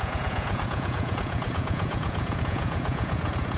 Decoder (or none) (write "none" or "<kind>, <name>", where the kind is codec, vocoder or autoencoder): vocoder, Vocos